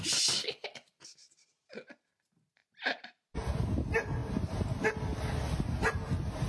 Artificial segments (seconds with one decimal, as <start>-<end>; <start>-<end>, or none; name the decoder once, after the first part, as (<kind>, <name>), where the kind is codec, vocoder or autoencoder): none